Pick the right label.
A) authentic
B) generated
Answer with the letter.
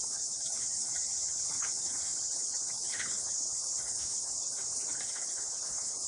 B